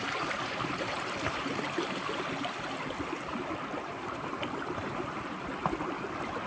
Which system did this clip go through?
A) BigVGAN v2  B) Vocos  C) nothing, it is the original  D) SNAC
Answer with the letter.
C